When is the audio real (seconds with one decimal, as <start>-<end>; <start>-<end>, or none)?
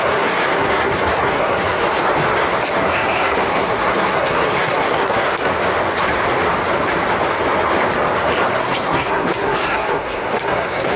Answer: 1.8-2.8; 5.5-8.5